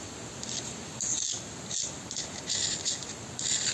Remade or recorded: recorded